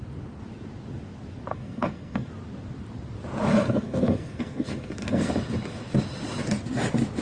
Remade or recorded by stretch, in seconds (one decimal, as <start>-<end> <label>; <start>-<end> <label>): 0.0-1.5 recorded; 1.5-2.3 remade; 2.3-3.5 recorded; 3.5-5.3 remade; 5.3-7.2 recorded